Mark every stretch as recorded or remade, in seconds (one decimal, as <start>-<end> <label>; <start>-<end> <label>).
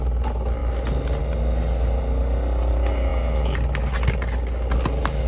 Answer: 0.0-5.3 recorded